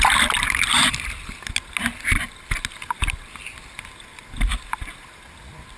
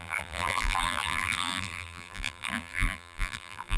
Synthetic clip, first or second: second